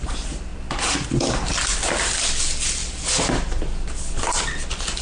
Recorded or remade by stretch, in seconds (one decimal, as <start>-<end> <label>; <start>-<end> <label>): 0.0-0.5 recorded; 0.5-1.1 remade; 1.1-2.8 recorded; 2.8-4.0 remade; 4.0-5.0 recorded